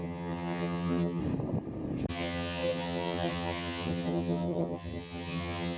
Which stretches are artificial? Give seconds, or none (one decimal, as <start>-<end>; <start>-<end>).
0.0-1.2; 2.1-5.8